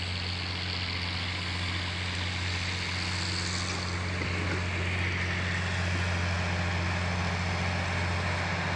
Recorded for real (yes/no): yes